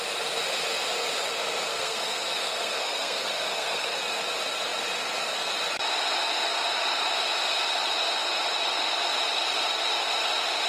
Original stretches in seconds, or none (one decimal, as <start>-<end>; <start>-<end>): 0.0-1.7; 4.0-10.7